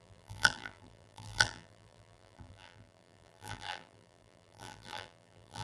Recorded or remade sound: remade